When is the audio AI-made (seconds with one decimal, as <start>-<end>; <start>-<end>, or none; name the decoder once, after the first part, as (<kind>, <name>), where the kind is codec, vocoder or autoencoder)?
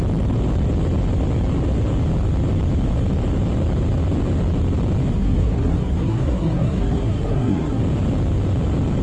5.1-7.8 (codec, SNAC)